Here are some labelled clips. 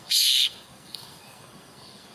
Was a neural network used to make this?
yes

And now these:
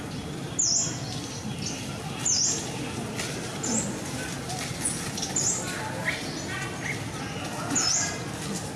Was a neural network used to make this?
no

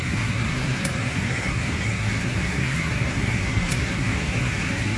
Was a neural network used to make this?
yes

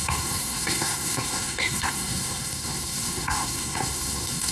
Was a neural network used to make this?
yes